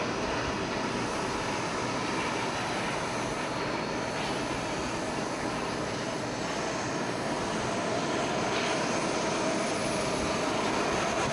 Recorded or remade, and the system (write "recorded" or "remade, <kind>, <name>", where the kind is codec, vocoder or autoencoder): recorded